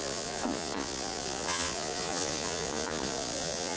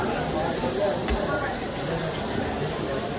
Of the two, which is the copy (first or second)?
first